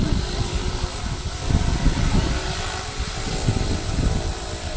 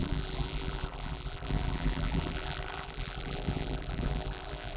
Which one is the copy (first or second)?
second